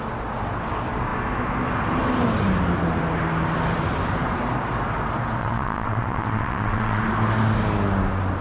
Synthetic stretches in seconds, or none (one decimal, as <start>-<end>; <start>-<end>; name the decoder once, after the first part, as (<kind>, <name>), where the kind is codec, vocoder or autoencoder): 5.4-7.0 (vocoder, WaveNeXt)